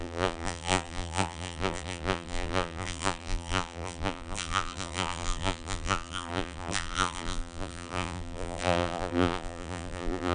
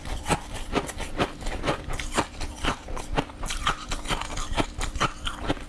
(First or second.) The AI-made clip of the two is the first